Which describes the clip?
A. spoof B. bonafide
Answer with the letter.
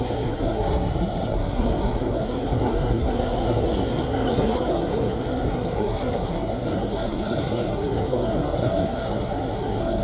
A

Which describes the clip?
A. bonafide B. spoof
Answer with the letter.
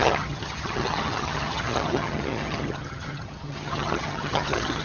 B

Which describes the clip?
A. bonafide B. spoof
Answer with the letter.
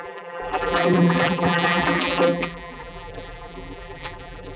B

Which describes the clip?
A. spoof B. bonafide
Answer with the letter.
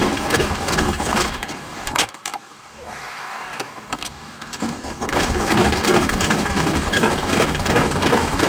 A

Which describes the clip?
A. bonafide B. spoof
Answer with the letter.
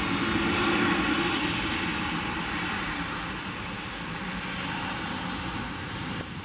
A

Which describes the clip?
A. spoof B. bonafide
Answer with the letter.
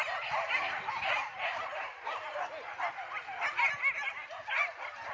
B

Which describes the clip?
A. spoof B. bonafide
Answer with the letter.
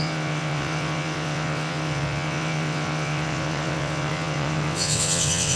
A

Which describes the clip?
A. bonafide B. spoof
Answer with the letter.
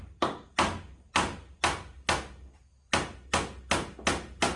A